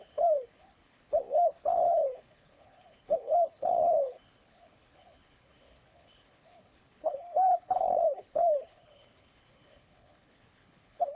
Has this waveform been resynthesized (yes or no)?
yes